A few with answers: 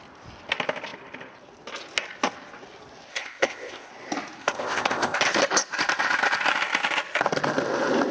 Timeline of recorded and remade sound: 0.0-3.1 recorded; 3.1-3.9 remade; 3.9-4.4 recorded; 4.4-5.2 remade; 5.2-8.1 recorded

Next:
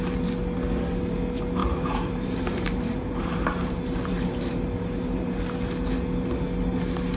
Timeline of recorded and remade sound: 0.0-1.6 recorded; 1.6-5.4 remade; 5.4-7.2 recorded

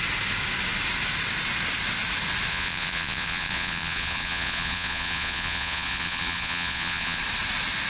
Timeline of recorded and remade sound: 0.0-2.5 recorded; 2.5-7.2 remade; 7.2-7.9 recorded

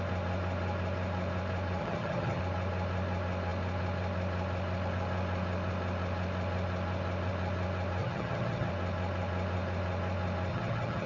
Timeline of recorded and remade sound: 0.0-1.8 recorded; 1.8-2.4 remade; 2.4-8.0 recorded; 8.0-8.7 remade; 8.7-10.5 recorded; 10.5-11.1 remade

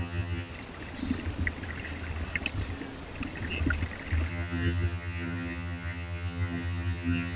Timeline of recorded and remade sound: 0.0-0.5 remade; 0.5-4.3 recorded; 4.3-7.4 remade

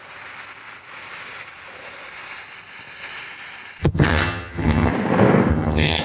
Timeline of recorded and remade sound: 0.0-3.8 recorded; 3.8-4.9 remade; 4.9-5.5 recorded; 5.5-6.0 remade